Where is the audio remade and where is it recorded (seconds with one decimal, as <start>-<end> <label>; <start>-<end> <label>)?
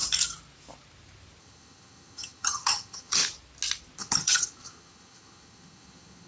0.0-1.4 recorded; 1.4-3.2 remade; 3.2-4.0 recorded; 4.0-6.3 remade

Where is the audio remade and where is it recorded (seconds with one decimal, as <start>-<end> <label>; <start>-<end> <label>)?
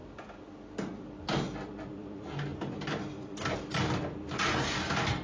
0.0-5.2 recorded